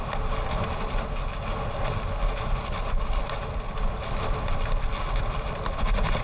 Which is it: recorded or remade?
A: recorded